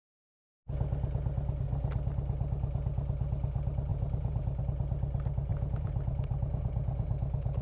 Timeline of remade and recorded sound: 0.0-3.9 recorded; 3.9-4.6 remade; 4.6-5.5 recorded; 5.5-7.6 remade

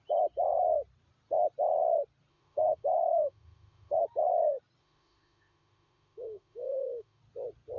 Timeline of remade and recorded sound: 0.0-2.3 recorded; 2.3-4.0 remade; 4.0-4.8 recorded; 4.8-7.2 remade; 7.2-7.8 recorded